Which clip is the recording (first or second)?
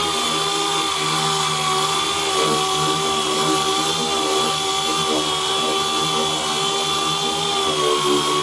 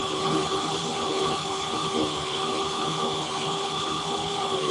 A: first